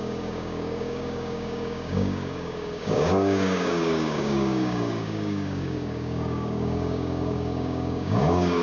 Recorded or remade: remade